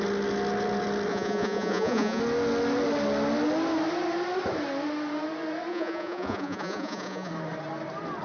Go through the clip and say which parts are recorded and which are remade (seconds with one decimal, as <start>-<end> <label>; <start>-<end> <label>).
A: 0.0-1.1 recorded; 1.1-2.2 remade; 2.2-5.7 recorded; 5.7-7.3 remade; 7.3-8.2 recorded